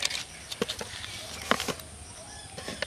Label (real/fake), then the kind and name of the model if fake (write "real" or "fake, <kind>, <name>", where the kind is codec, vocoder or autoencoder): real